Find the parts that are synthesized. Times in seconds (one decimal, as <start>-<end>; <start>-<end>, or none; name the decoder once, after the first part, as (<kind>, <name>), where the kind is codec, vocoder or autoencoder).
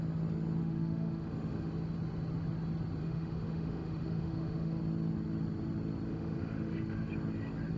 0.6-1.7 (autoencoder, DAC-VAE); 3.0-4.8; 6.1-7.1